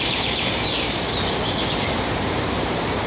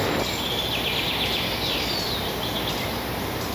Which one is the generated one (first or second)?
first